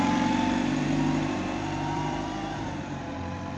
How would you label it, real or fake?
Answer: fake